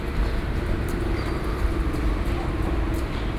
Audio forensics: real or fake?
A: real